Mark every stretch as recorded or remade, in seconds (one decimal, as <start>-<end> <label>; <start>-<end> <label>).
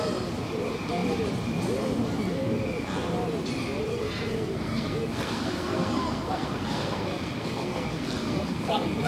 0.0-3.9 recorded; 3.9-9.1 remade